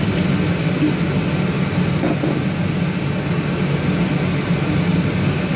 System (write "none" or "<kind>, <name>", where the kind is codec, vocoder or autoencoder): none